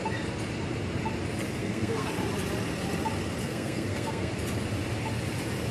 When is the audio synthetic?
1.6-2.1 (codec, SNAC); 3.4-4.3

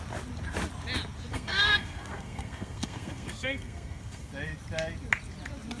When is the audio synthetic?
1.3-4.3 (codec, SNAC)

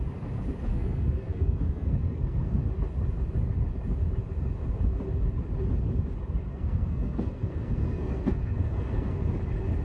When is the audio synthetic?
0.7-2.6 (codec, SNAC); 6.5-9.3

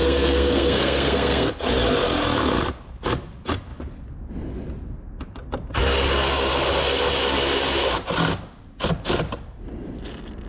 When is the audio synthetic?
0.0-1.5 (codec, SNAC)

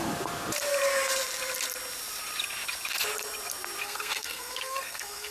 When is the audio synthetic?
3.8-5.3 (codec, SNAC)

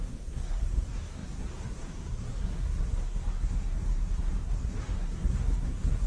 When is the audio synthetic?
0.0-6.1 (codec, SNAC)

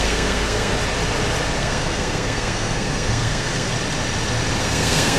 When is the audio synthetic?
0.0-0.7 (codec, SNAC); 1.6-3.7; 4.6-5.2